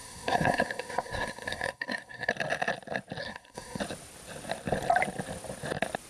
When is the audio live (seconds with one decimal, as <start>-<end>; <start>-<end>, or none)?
2.3-3.2; 3.8-6.1